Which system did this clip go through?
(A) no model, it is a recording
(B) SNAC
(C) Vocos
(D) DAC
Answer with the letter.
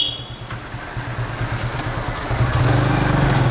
A